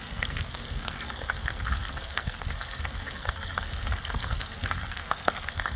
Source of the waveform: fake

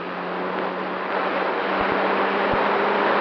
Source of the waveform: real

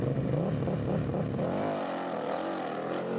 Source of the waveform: real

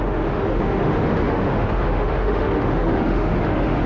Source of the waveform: fake